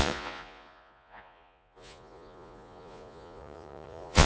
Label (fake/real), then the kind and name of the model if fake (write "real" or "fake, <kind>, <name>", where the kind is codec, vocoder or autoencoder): fake, vocoder, Vocos